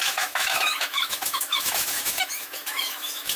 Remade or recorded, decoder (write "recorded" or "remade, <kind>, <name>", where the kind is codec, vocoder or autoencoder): remade, autoencoder, DAC-VAE